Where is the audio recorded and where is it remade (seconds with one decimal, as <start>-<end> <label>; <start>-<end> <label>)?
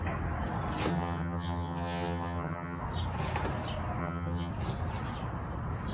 0.0-0.9 recorded; 0.9-2.8 remade; 2.8-4.0 recorded; 4.0-4.5 remade; 4.5-5.9 recorded